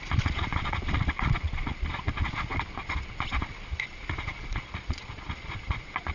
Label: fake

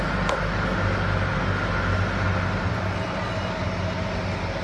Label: real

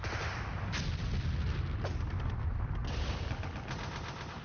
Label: real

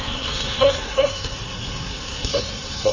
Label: fake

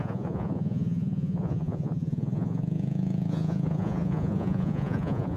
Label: fake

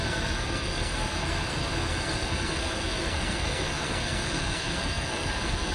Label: fake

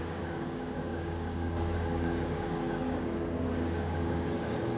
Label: fake